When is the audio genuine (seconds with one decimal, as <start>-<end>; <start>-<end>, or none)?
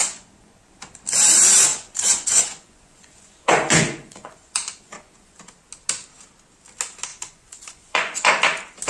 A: 0.7-1.7; 5.4-7.1; 8.3-8.9